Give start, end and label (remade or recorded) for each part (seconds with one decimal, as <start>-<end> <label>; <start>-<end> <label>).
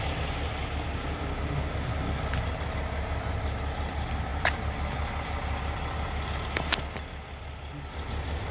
0.0-8.5 recorded